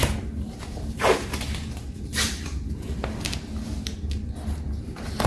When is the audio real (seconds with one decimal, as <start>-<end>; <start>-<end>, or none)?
2.6-5.3

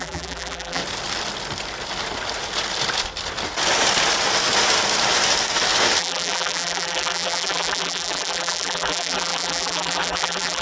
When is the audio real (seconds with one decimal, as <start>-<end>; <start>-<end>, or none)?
0.8-6.0